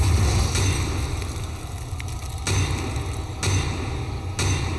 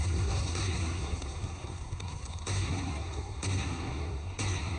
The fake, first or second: second